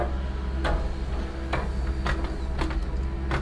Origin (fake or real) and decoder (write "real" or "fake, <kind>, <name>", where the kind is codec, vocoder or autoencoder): real